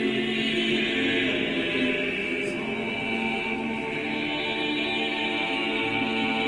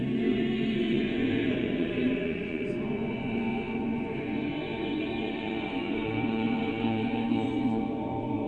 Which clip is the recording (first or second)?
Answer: first